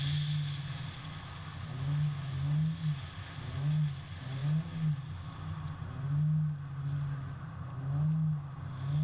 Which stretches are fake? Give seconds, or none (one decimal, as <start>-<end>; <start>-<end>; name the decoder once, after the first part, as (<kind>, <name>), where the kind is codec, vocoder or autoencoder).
none